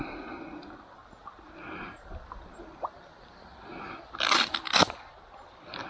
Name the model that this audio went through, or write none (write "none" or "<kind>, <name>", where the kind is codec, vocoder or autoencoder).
none